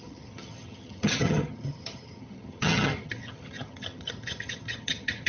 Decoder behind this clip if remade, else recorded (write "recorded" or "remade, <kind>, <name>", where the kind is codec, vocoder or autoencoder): remade, vocoder, HiFi-GAN